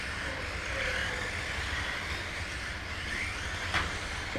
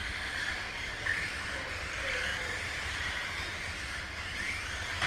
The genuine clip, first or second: first